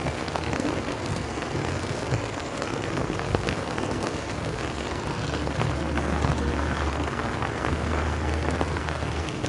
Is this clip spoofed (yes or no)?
yes